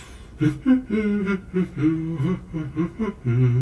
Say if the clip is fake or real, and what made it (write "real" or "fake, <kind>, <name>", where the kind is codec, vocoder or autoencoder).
real